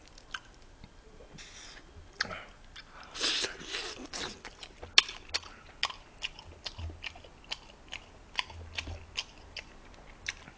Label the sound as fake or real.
real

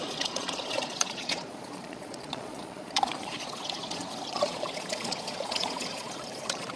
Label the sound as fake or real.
fake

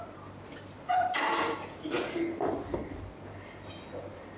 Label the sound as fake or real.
real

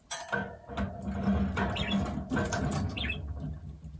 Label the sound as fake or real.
real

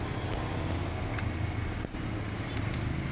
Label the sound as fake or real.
real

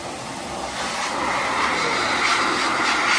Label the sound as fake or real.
real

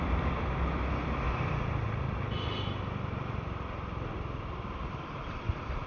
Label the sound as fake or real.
real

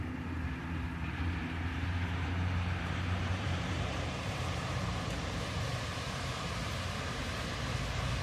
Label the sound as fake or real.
fake